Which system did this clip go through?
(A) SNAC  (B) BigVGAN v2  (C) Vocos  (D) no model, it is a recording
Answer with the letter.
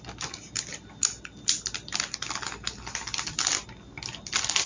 D